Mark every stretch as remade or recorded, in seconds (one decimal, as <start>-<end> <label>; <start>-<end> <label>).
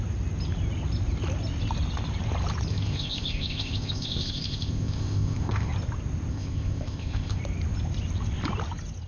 0.0-2.7 recorded; 2.7-5.7 remade; 5.7-6.3 recorded; 6.3-7.4 remade; 7.4-9.1 recorded